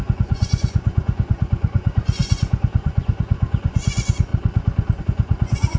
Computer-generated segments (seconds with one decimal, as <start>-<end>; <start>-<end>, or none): 0.0-4.3; 5.0-5.8